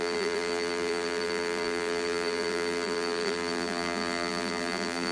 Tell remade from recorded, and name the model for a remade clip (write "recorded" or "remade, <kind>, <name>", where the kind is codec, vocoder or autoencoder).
remade, vocoder, BigVGAN v2